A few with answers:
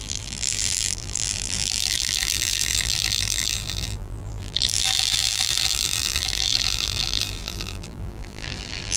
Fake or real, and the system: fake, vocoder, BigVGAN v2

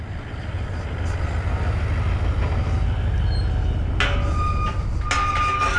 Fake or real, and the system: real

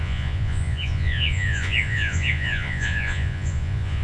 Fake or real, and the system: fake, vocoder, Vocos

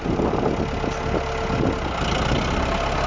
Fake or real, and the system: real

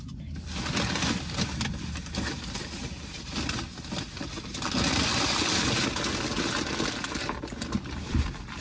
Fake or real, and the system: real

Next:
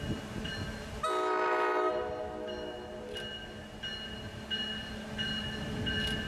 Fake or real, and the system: real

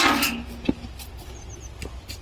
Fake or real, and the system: real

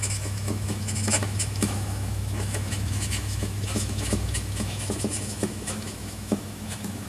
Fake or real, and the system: fake, autoencoder, DAC-VAE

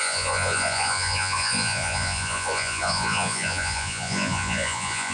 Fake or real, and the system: fake, vocoder, Vocos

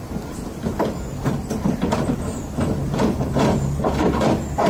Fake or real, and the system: real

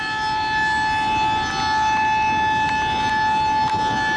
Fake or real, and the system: real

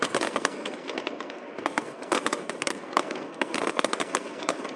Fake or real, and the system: fake, codec, SNAC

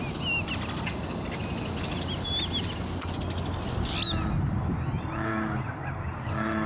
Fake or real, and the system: real